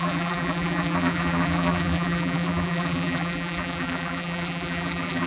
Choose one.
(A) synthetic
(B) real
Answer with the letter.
A